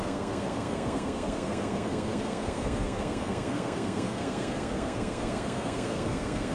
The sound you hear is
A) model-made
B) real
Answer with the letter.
A